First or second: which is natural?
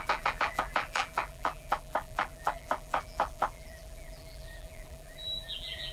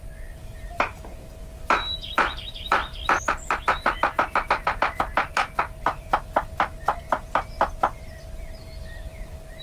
second